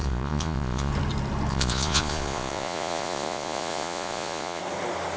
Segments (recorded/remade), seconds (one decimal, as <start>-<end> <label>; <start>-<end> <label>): 0.0-0.9 remade; 0.9-1.5 recorded; 1.5-4.6 remade; 4.6-5.2 recorded